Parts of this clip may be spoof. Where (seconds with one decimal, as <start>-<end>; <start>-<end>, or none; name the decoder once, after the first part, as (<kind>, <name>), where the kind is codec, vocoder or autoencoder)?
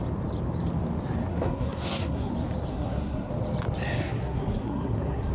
1.3-2.3 (codec, SNAC); 2.7-3.3; 4.0-5.3